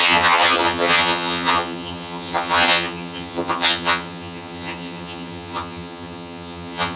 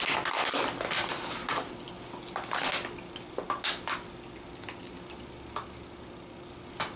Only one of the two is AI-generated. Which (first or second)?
first